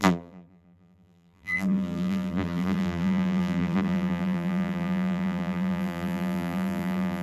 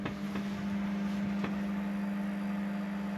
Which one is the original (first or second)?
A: second